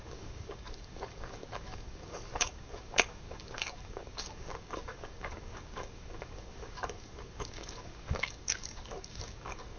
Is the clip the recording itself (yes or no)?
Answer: no